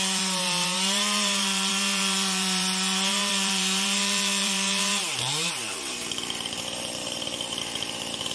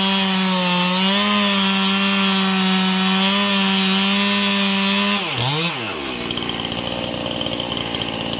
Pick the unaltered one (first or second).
second